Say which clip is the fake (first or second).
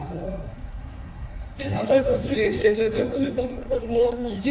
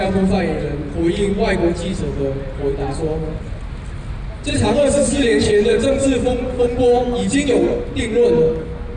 first